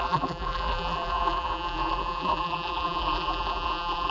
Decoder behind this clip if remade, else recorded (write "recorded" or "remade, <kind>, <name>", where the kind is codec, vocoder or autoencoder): remade, vocoder, BigVGAN v2